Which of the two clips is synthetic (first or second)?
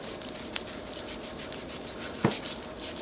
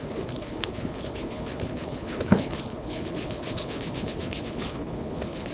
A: second